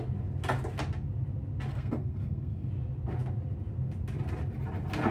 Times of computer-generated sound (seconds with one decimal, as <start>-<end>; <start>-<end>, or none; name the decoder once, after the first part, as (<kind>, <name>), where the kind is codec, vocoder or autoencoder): 1.7-2.7 (codec, SNAC)